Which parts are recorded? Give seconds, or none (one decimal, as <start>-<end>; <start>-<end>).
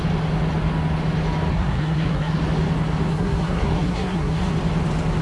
0.0-1.5; 2.4-3.1; 4.5-5.2